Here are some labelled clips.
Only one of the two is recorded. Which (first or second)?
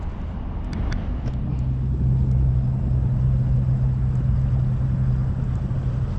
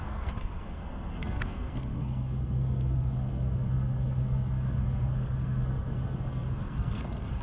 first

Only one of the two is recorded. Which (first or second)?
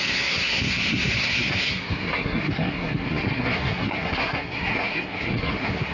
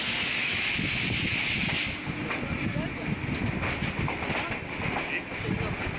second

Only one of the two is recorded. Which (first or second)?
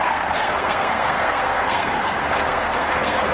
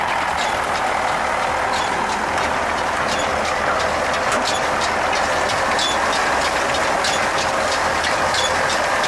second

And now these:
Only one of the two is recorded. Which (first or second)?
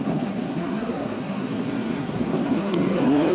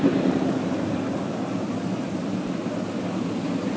second